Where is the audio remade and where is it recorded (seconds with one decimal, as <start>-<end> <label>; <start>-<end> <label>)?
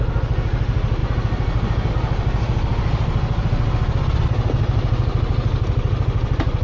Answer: 0.0-6.6 recorded